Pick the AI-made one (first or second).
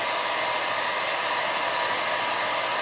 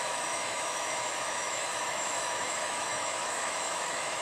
second